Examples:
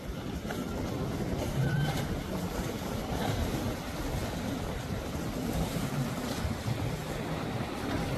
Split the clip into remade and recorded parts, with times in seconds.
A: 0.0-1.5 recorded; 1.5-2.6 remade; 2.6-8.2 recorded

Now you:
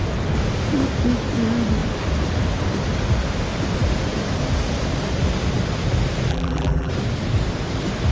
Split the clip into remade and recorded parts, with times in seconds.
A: 0.0-6.3 recorded; 6.3-6.9 remade; 6.9-8.1 recorded

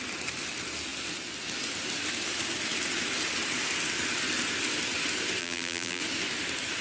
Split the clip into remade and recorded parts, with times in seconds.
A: 0.0-5.4 recorded; 5.4-6.0 remade; 6.0-6.8 recorded

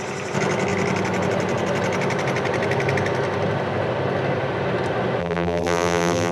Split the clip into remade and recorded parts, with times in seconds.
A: 0.0-5.2 recorded; 5.2-6.3 remade